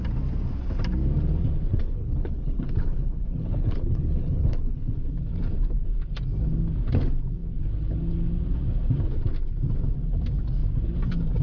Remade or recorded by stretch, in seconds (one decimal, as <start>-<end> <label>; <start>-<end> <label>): 0.0-1.7 recorded; 1.7-4.9 remade; 4.9-11.4 recorded

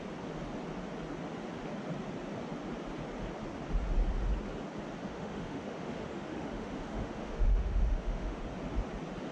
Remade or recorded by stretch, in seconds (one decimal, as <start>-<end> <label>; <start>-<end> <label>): 0.0-5.0 recorded; 5.0-8.4 remade; 8.4-9.3 recorded

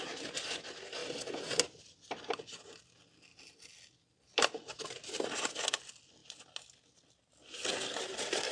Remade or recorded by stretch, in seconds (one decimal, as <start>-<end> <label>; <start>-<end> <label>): 0.0-8.5 recorded

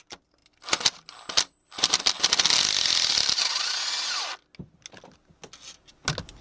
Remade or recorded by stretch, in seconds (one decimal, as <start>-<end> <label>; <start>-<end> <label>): 0.0-6.4 recorded

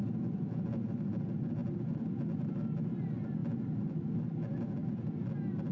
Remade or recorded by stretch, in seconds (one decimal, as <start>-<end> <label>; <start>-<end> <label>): 0.0-5.7 recorded

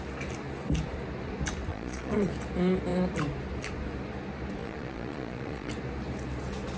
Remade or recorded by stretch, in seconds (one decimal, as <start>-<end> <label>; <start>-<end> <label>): 0.0-1.7 recorded; 1.7-2.3 remade; 2.3-4.6 recorded; 4.6-5.7 remade; 5.7-6.8 recorded

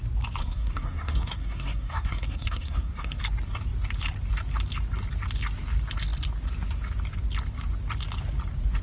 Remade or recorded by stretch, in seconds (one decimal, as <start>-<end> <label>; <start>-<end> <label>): 0.0-0.4 recorded; 0.4-3.2 remade; 3.2-8.8 recorded

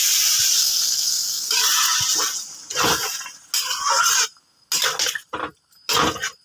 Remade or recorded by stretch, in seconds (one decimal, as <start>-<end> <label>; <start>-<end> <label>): 0.0-0.6 recorded; 0.6-1.5 remade; 1.5-6.4 recorded